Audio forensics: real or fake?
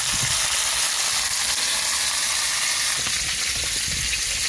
real